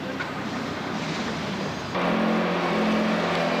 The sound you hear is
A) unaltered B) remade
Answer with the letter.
A